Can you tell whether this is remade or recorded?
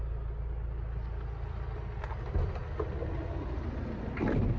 recorded